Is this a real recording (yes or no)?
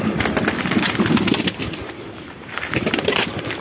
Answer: yes